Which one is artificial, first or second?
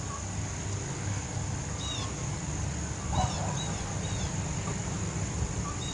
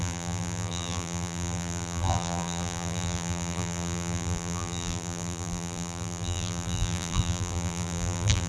second